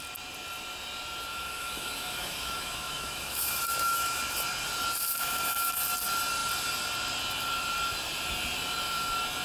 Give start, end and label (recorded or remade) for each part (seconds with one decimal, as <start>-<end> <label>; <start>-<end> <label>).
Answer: 0.0-1.3 recorded; 1.3-4.2 remade; 4.2-5.2 recorded; 5.2-5.7 remade; 5.7-9.4 recorded